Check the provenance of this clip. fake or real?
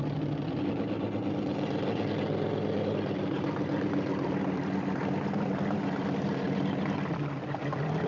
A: real